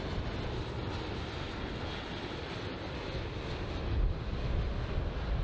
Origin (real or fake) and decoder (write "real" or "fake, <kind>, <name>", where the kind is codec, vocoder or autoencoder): real